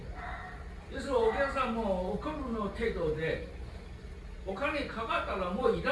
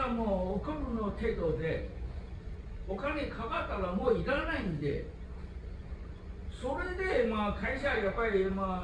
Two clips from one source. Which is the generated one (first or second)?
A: second